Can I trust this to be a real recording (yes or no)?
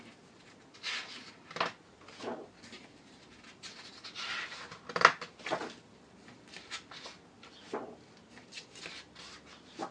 yes